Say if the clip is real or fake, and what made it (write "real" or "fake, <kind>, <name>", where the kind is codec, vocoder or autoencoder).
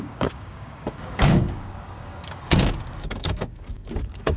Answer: fake, codec, DAC